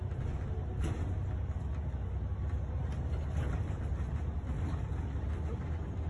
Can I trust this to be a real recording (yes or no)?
yes